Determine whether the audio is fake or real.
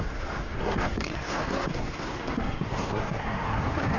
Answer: fake